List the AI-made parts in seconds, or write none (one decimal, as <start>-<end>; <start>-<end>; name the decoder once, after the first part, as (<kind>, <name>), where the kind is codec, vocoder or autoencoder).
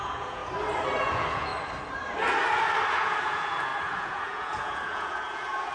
0.0-0.4 (vocoder, Vocos); 1.0-1.5; 2.9-5.7